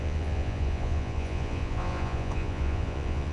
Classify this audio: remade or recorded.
remade